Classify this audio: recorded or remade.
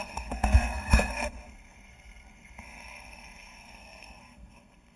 remade